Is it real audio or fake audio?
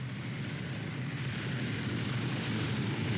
fake